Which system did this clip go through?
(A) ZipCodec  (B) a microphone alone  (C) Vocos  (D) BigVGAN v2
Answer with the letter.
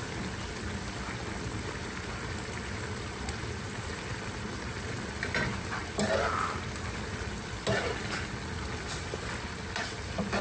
B